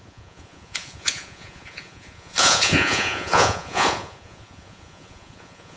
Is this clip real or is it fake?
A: fake